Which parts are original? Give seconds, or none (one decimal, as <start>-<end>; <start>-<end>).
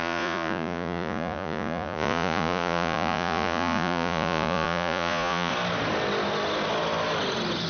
5.5-7.7